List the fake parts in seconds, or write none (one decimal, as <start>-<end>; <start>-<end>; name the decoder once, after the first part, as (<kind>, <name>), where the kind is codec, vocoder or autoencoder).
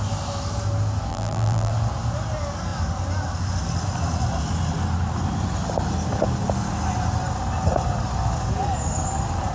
1.1-1.7 (vocoder, BigVGAN v2)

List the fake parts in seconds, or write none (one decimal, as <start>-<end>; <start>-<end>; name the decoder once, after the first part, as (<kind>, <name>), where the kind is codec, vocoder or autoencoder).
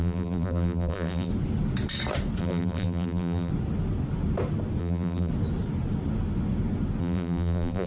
0.0-1.3 (vocoder, BigVGAN v2); 2.4-3.5; 4.8-5.3; 7.0-7.9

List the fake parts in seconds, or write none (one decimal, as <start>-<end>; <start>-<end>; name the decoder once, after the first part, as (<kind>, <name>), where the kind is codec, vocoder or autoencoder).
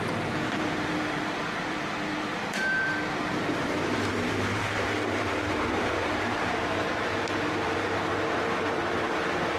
0.0-6.9 (vocoder, BigVGAN v2); 7.5-9.6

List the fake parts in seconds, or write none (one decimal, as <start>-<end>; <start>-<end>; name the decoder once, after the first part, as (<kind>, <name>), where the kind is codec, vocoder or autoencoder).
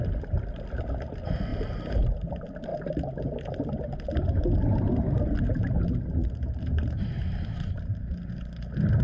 1.5-2.3 (vocoder, BigVGAN v2); 6.2-7.8